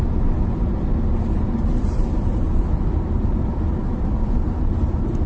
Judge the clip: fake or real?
fake